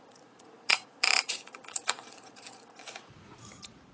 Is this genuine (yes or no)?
no